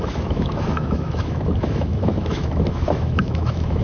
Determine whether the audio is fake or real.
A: fake